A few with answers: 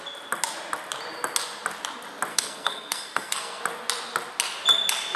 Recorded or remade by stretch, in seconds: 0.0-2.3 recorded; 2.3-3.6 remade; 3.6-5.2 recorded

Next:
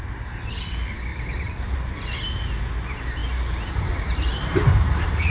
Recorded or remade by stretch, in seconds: 0.0-1.1 recorded; 1.1-2.0 remade; 2.0-3.2 recorded; 3.2-5.3 remade